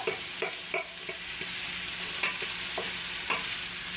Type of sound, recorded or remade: recorded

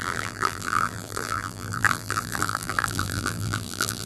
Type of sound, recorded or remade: remade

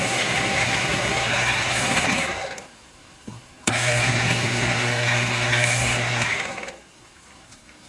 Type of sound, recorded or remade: remade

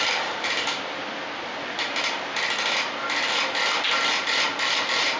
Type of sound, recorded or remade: recorded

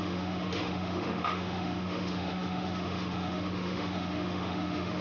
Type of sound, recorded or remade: remade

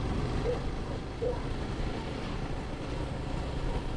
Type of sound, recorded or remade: recorded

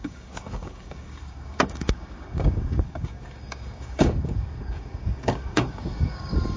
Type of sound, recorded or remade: remade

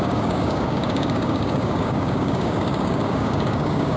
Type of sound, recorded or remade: remade